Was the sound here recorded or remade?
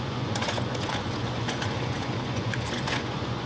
remade